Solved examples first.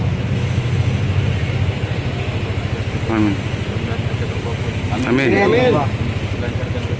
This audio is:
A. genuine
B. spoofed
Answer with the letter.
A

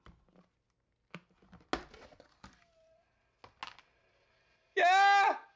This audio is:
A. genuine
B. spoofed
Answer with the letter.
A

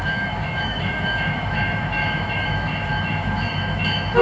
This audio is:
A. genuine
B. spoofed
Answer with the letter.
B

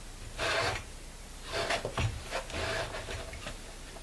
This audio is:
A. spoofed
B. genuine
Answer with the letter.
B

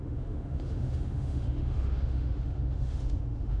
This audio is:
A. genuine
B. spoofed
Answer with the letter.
B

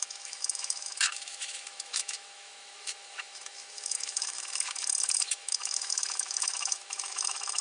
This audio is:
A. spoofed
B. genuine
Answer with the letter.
A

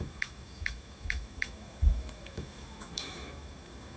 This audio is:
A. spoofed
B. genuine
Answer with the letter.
A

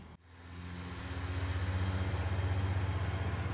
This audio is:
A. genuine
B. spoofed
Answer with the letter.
A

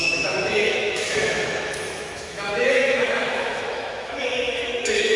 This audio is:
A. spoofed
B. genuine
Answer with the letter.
A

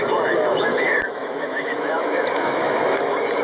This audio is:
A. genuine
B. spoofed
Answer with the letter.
B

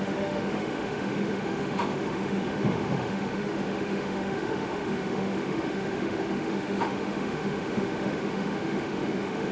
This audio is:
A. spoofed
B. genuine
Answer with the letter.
A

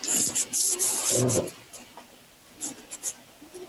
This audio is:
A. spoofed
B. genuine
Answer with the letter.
B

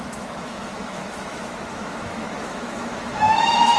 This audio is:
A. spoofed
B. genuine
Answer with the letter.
A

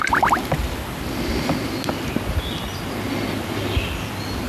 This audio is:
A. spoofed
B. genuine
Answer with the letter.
B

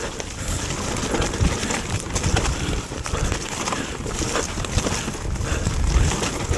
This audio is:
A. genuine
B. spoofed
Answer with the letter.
A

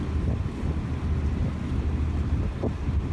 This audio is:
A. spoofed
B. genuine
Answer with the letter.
B